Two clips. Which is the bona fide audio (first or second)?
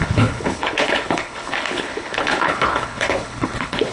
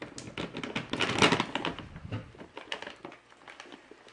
second